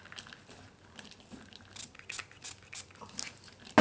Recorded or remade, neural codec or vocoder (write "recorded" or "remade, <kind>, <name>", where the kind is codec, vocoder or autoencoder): recorded